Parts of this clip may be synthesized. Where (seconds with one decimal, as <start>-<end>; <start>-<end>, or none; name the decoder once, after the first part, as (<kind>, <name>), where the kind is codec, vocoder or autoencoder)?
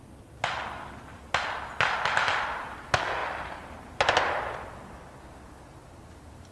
none